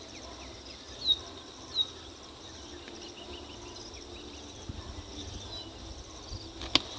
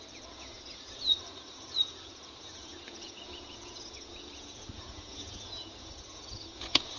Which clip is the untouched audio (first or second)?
first